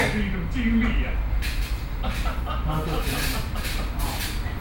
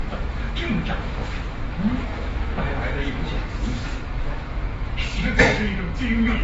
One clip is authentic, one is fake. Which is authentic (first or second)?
first